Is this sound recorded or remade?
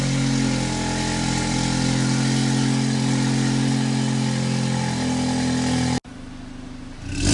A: recorded